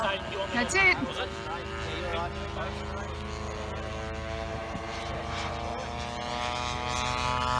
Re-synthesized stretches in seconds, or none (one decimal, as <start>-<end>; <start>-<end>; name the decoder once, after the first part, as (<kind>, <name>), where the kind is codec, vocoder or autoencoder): 4.5-5.5 (vocoder, BigVGAN v2)